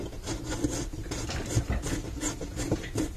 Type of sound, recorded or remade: recorded